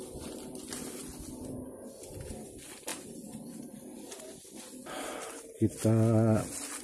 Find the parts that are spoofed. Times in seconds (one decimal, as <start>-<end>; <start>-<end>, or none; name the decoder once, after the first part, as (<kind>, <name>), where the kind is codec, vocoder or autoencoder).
1.1-1.7 (vocoder, BigVGAN v2); 2.9-4.2

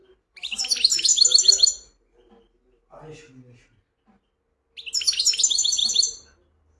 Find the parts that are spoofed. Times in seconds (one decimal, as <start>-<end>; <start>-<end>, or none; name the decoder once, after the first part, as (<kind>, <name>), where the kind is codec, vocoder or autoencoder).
0.0-0.6 (vocoder, BigVGAN v2); 5.8-6.8

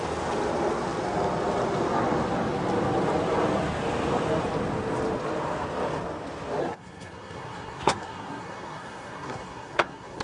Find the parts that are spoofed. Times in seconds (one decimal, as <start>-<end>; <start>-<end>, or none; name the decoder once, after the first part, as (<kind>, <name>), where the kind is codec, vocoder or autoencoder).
6.6-10.2 (codec, SNAC)